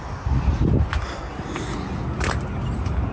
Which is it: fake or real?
real